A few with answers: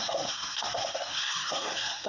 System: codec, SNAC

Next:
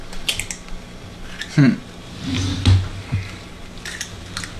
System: none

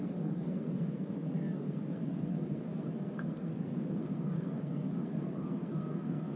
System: codec, SNAC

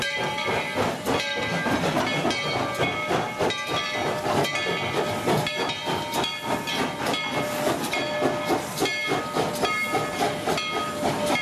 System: none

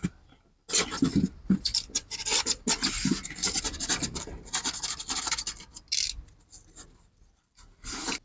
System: none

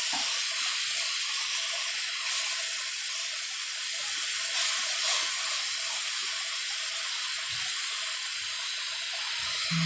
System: none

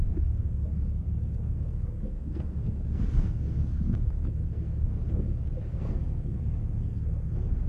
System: codec, SNAC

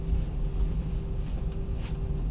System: none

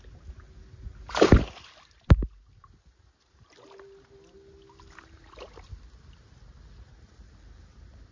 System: none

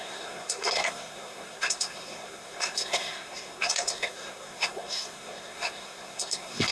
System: codec, SNAC